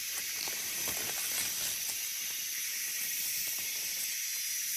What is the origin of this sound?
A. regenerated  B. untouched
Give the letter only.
B